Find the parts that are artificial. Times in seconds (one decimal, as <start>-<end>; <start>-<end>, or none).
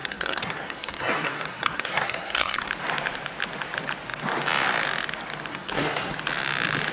0.0-2.7; 5.5-6.1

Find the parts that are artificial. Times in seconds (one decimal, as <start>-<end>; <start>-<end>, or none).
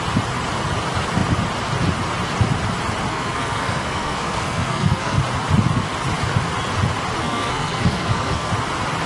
3.1-5.2; 7.2-8.5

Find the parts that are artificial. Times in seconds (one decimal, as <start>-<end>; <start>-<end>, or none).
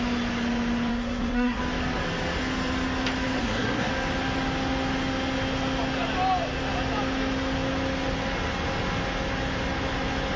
0.9-1.6; 3.4-3.9